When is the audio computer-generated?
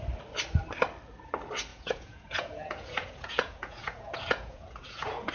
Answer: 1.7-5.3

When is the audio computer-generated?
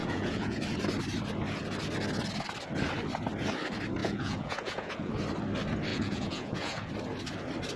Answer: 0.0-0.6; 4.0-5.1; 5.9-6.9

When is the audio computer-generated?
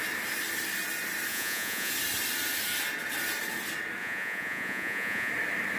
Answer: 1.3-1.9; 4.0-5.3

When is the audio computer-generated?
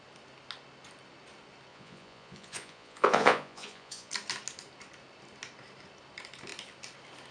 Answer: 1.7-4.1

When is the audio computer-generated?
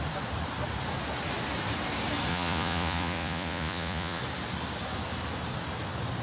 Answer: 2.3-4.2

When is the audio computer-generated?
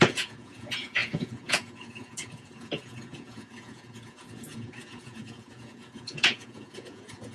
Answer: 0.0-7.3